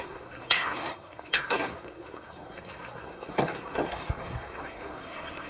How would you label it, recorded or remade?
remade